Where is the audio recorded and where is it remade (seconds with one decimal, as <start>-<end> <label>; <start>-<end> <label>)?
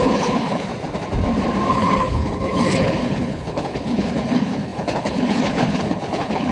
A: 0.0-0.7 remade; 0.7-1.7 recorded; 1.7-6.5 remade